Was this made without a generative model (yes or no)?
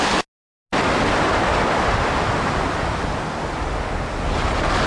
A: yes